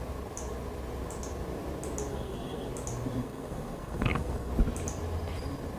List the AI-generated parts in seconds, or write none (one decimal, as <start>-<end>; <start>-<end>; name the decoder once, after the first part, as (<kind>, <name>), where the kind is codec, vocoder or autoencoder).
2.1-2.7 (codec, SNAC); 3.2-4.5